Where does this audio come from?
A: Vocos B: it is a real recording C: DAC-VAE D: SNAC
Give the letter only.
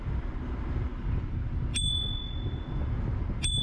B